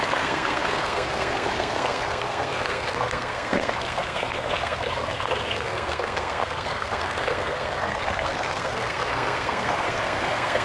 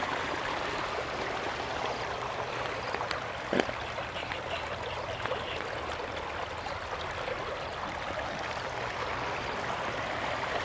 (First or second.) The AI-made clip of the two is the first